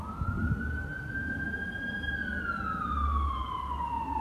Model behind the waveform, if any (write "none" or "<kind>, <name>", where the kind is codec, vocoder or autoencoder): none